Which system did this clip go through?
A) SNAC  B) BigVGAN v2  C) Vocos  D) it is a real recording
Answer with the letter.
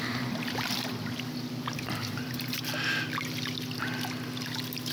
D